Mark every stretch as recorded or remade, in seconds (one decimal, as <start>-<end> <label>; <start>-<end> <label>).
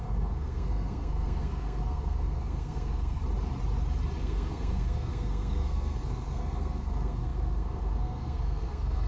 0.0-3.2 remade; 3.2-4.2 recorded; 4.2-9.1 remade